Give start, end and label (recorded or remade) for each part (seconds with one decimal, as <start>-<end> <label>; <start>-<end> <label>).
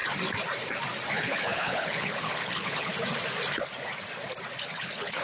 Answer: 0.0-1.1 recorded; 1.1-2.9 remade; 2.9-4.8 recorded; 4.8-5.2 remade